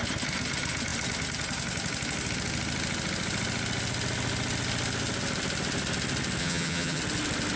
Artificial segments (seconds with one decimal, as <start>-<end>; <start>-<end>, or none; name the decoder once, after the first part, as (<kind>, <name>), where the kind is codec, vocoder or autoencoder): 6.4-7.0 (vocoder, HiFi-GAN)